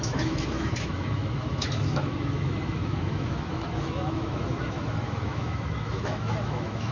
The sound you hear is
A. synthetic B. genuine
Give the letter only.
A